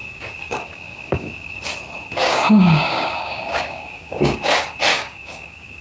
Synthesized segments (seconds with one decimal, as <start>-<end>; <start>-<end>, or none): 0.0-1.6; 2.2-4.5; 4.9-5.8